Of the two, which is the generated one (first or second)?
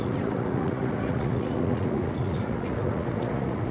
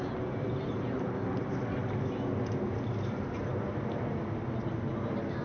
first